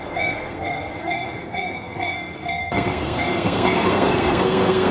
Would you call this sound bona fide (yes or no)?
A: no